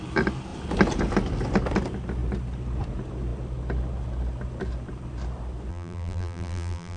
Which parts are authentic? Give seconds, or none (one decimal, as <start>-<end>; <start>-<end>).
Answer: 0.0-5.7